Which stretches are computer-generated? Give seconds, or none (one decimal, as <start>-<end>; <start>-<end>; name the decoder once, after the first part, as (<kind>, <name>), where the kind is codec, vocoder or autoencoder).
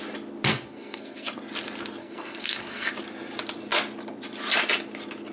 0.5-1.3 (codec, SNAC); 2.0-2.9